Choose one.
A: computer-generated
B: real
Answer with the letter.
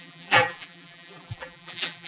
A